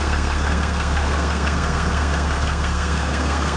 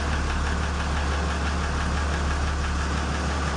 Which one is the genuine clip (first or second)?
second